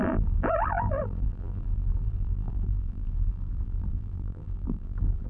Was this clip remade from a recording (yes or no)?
yes